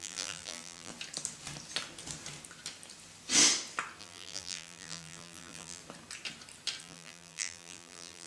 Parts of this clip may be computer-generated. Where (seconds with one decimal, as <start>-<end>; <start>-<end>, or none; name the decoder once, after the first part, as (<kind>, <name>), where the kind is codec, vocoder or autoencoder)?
0.0-0.9 (vocoder, BigVGAN v2); 4.0-5.8; 6.8-8.3